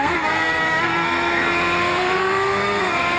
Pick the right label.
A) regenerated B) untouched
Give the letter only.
A